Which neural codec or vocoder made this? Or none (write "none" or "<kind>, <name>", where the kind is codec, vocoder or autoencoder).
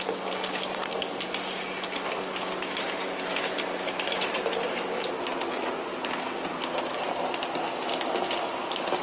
none